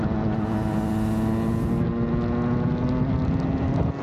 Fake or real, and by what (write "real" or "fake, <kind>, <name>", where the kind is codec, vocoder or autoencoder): real